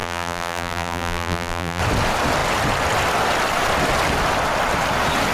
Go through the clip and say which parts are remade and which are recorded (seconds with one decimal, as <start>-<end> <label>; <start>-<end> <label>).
0.0-1.8 remade; 1.8-5.3 recorded